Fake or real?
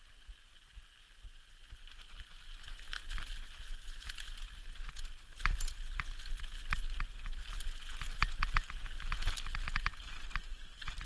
real